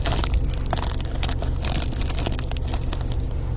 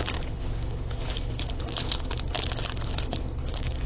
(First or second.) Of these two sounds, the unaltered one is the first